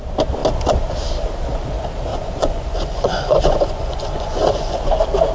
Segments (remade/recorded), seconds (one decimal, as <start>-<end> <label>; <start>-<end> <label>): 0.0-2.1 recorded; 2.1-4.8 remade; 4.8-5.3 recorded